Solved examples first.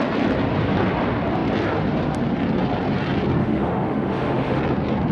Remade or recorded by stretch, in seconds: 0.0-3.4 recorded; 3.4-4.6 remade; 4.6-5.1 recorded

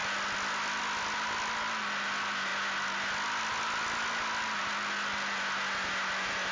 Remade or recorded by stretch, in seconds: 0.0-6.5 recorded

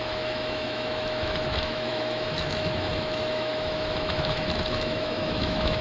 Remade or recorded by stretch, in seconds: 0.0-5.8 remade

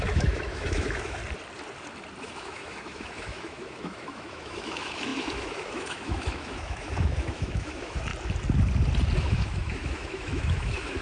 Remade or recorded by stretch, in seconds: 0.0-1.2 remade; 1.2-2.2 recorded; 2.2-8.1 remade; 8.1-9.2 recorded; 9.2-11.0 remade

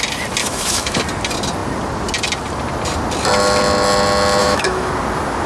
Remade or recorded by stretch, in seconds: 0.0-0.4 recorded; 0.4-1.0 remade; 1.0-4.4 recorded; 4.4-4.9 remade; 4.9-5.5 recorded

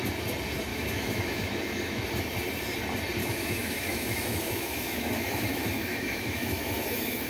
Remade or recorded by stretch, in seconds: 0.0-0.7 recorded; 0.7-2.0 remade; 2.0-3.2 recorded; 3.2-7.3 remade